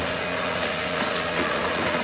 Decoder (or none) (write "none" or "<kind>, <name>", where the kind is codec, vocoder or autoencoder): vocoder, Vocos